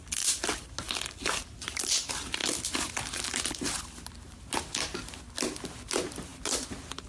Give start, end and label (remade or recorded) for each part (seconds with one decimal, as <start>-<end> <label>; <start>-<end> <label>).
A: 0.0-7.1 recorded